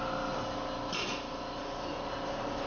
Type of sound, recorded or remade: recorded